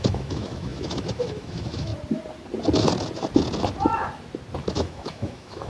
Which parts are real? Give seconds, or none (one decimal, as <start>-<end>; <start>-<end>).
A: 1.9-4.7